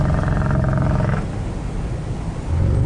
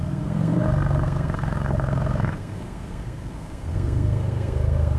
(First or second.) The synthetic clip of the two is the second